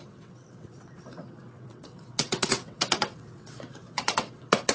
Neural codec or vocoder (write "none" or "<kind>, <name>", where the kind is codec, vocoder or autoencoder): vocoder, WaveNeXt